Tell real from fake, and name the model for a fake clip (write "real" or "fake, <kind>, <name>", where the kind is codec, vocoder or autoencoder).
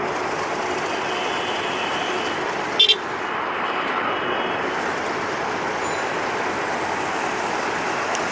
real